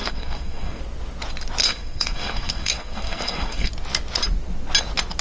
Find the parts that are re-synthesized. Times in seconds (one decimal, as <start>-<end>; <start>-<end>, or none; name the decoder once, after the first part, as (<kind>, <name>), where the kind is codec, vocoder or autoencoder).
0.0-0.8 (codec, SNAC); 1.6-3.7